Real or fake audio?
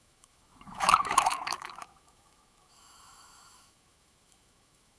fake